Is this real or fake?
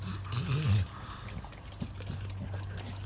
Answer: real